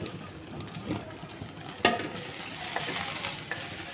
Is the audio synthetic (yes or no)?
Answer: no